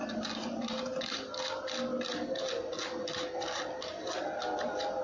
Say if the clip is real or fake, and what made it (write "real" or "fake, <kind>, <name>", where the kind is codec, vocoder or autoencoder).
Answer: real